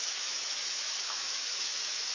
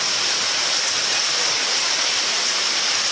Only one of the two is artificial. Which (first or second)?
first